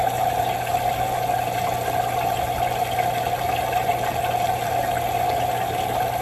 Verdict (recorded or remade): recorded